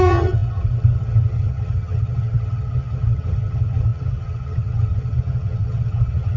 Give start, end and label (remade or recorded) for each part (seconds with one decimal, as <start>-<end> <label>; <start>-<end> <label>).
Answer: 0.0-6.4 remade